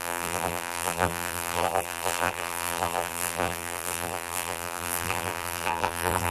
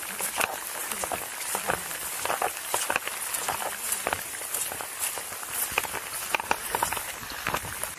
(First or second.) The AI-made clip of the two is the first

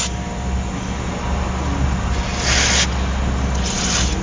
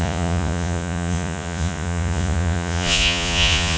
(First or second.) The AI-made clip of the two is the second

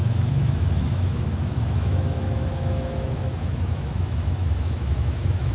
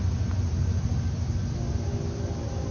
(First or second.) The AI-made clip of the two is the first